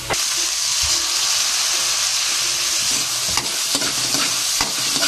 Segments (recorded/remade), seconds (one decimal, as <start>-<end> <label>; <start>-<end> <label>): 0.0-5.1 recorded